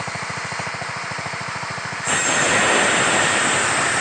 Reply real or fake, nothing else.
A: real